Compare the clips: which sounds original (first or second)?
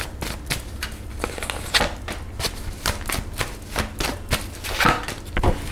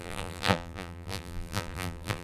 first